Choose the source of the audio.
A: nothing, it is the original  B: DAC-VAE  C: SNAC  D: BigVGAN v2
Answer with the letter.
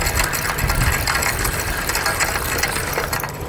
A